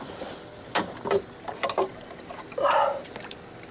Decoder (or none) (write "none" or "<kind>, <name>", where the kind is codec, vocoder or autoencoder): none